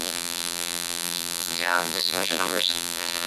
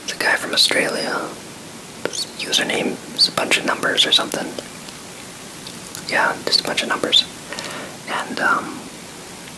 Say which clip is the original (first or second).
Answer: second